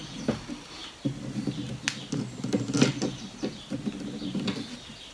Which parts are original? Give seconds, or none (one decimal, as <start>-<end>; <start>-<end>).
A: 0.0-5.1